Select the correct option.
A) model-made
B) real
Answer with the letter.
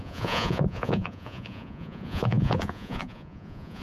A